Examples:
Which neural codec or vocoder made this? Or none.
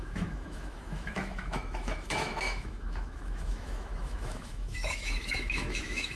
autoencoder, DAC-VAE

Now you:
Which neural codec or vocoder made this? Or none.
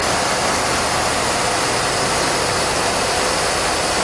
none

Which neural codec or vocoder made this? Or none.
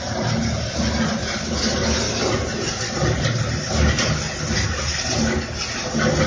none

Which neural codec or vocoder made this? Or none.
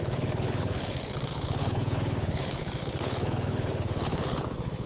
codec, HILCodec